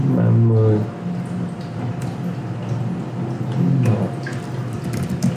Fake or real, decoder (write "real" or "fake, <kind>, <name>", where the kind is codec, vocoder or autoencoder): real